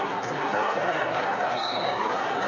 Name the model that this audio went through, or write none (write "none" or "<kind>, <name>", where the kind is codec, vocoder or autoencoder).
codec, SNAC